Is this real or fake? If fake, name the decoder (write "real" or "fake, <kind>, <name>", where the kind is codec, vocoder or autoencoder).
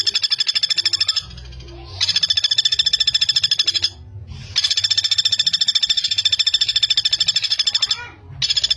real